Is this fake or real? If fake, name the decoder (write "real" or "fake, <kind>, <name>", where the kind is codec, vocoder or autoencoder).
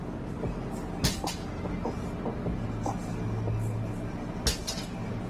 real